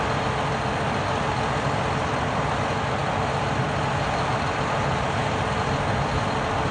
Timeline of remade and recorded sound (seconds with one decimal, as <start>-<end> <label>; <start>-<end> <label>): 0.0-6.7 recorded